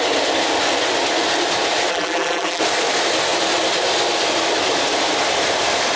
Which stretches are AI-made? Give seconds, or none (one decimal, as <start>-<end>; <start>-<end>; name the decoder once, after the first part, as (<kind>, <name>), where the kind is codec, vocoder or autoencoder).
1.9-2.6 (vocoder, BigVGAN v2)